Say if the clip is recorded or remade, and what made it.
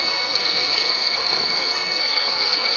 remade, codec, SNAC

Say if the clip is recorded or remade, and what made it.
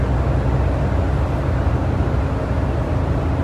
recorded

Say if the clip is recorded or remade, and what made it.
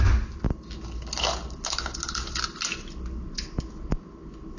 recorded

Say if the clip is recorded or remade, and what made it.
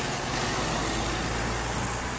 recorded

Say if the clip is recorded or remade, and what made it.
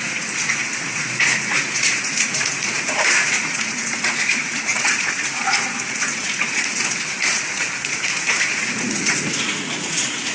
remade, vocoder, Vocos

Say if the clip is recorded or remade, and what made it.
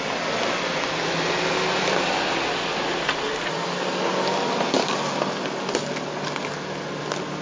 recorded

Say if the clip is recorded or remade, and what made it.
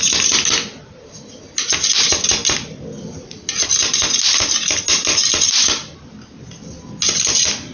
recorded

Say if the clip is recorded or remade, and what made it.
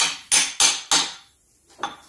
recorded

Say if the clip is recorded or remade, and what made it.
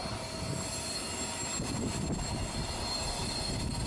recorded